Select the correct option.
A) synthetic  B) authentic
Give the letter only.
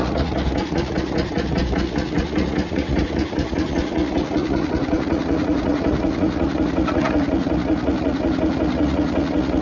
A